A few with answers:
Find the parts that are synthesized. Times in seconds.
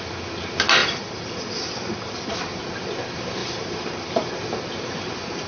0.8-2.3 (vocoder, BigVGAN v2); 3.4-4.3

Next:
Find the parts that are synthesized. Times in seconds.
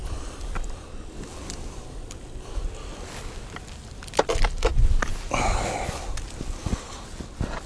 none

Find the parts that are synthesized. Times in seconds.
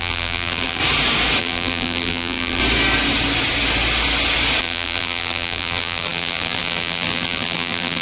0.0-0.8 (vocoder, BigVGAN v2); 1.4-2.6; 4.6-8.0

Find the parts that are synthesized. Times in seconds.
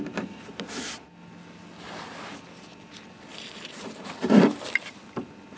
3.3-5.0 (vocoder, BigVGAN v2)